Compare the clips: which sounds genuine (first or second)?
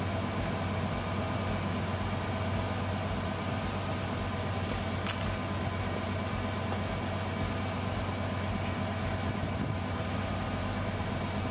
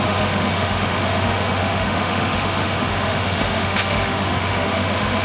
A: first